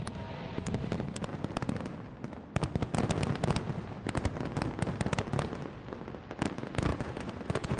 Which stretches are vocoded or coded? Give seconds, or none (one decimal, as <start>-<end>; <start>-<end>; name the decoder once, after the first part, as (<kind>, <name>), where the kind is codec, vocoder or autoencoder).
6.9-7.8 (vocoder, Vocos)